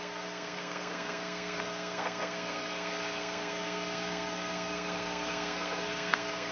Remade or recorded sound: remade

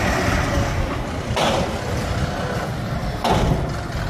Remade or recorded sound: recorded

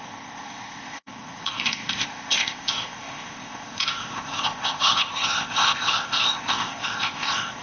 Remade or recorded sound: remade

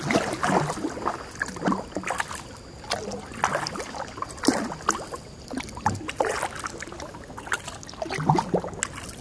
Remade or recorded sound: recorded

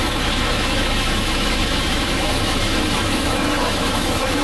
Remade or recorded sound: remade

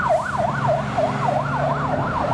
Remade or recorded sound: recorded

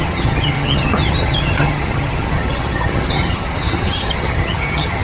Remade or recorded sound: remade